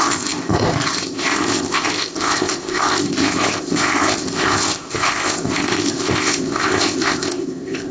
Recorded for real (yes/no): no